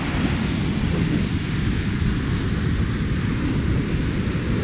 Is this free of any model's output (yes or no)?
yes